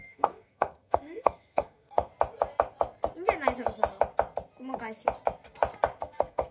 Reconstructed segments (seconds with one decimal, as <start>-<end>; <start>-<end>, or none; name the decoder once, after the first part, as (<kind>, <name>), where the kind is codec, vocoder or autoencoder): 0.0-2.1 (codec, SNAC); 6.0-6.5